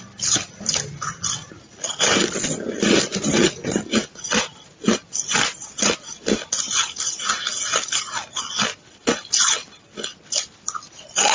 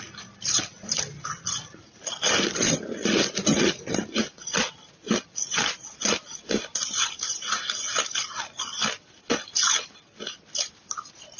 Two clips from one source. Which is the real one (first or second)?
first